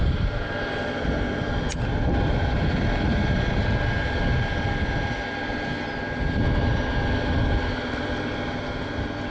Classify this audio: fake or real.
real